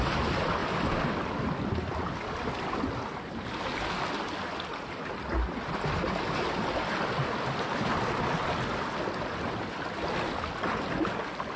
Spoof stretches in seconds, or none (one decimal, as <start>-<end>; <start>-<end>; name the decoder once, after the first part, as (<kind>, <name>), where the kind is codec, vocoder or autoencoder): none